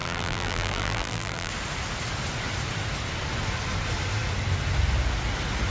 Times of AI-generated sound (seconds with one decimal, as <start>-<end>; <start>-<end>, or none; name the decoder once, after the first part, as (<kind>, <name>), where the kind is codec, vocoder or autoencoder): 0.0-1.5 (vocoder, BigVGAN v2)